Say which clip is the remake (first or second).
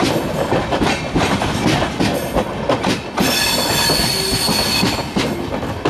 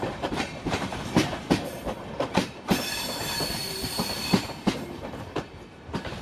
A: second